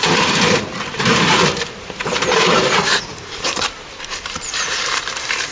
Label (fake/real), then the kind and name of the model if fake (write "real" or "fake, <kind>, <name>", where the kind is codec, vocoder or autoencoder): fake, vocoder, BigVGAN v2